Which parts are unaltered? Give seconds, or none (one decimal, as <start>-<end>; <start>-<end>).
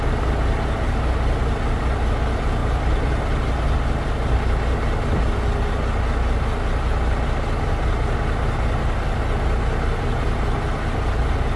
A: 0.0-11.6